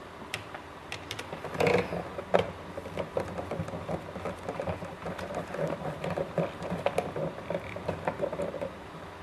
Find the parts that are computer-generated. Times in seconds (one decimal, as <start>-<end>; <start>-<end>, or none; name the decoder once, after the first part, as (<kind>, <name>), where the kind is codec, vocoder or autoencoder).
none